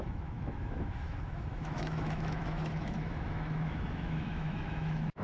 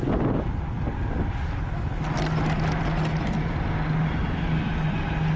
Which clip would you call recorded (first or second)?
second